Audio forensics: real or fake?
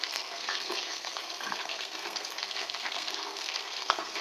fake